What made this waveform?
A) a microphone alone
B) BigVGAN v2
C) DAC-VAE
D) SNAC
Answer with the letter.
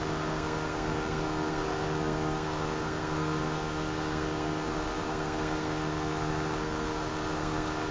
D